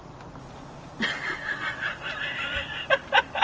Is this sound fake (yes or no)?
no